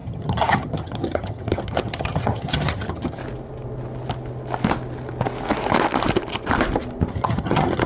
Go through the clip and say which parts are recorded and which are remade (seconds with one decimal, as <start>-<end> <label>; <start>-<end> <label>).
0.0-3.2 remade; 3.2-7.1 recorded; 7.1-7.9 remade